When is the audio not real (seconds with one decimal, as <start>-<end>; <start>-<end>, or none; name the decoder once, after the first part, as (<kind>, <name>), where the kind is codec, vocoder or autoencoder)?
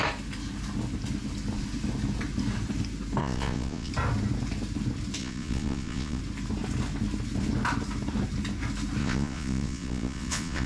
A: 3.2-3.9 (vocoder, Vocos); 5.2-6.2; 9.0-10.7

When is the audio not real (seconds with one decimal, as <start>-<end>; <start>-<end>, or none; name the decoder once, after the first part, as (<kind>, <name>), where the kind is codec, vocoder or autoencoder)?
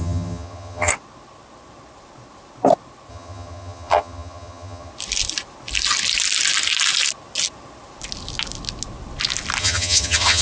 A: 0.0-0.9 (vocoder, HiFi-GAN); 3.1-4.9; 9.6-10.4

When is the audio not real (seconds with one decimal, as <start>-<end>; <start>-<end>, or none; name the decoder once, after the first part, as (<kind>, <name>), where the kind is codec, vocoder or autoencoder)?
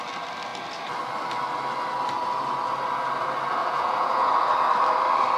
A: 3.6-4.3 (vocoder, Vocos)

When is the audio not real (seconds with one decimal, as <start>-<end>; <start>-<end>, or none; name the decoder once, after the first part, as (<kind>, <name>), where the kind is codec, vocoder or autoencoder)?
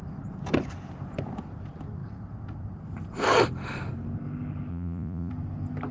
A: 4.7-5.3 (vocoder, Vocos)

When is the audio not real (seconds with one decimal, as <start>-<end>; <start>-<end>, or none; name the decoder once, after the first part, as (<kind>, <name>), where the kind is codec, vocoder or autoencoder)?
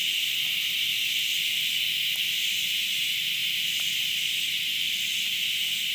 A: 0.9-1.8 (vocoder, BigVGAN v2); 3.4-3.9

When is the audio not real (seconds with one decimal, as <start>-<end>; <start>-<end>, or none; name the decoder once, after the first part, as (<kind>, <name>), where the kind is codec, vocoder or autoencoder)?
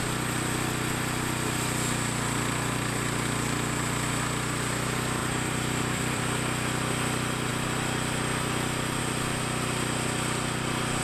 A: 5.2-6.2 (vocoder, BigVGAN v2)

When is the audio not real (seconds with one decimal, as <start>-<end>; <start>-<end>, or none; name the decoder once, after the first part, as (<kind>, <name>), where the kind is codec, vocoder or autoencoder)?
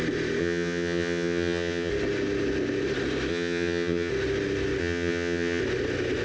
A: 0.4-1.9 (vocoder, HiFi-GAN); 3.3-4.1; 4.8-5.6